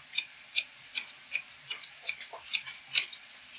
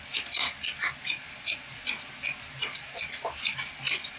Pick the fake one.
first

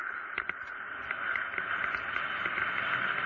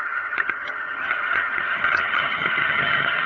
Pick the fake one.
second